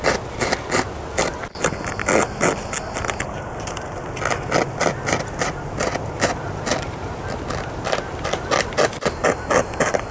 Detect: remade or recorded recorded